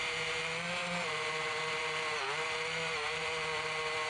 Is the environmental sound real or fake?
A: real